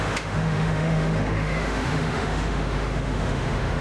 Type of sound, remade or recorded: remade